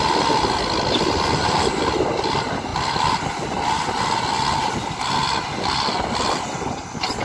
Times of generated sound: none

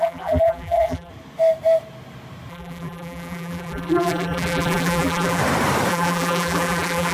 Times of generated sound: 0.0-1.1; 2.5-5.4; 5.9-7.1